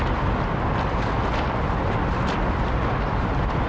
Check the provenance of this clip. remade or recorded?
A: recorded